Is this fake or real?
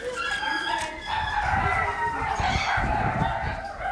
real